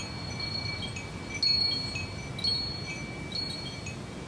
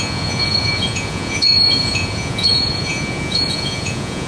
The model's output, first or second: second